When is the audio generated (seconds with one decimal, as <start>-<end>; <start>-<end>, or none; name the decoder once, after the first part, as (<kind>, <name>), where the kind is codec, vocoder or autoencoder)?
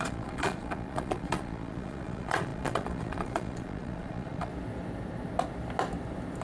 0.0-4.5 (vocoder, Vocos)